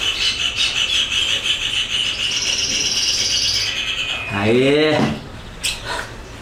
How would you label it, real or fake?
real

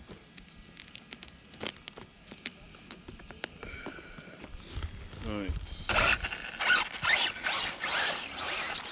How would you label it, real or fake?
real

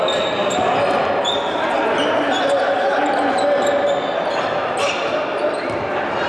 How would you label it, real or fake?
real